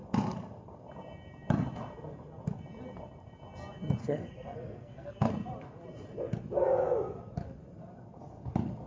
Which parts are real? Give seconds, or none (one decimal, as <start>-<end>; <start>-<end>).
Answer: 0.0-4.0; 5.3-8.9